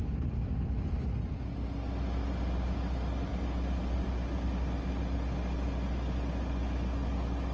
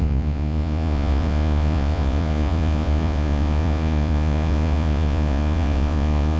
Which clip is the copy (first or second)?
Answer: second